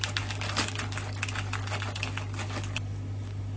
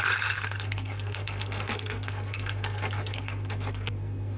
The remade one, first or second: second